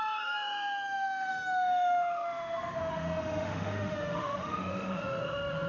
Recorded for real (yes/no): no